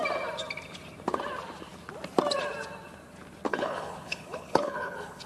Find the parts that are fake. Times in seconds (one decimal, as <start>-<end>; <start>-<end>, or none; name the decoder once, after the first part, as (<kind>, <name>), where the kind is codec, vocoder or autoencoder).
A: 3.5-5.3 (codec, HILCodec)